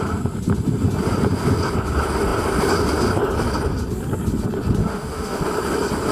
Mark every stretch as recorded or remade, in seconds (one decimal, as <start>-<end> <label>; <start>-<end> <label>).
0.0-4.8 recorded; 4.8-5.4 remade; 5.4-6.1 recorded